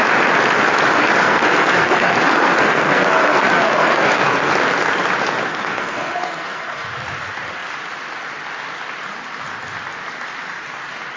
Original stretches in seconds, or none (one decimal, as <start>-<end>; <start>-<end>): 0.0-1.2; 4.5-5.5; 6.9-11.2